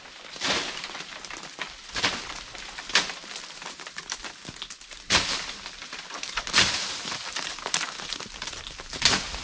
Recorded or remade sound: recorded